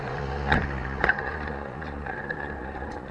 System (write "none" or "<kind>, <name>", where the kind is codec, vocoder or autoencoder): vocoder, Vocos